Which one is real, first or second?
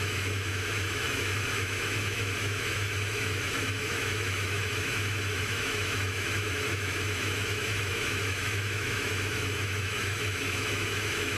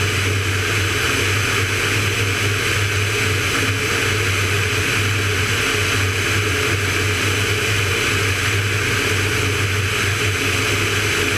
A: second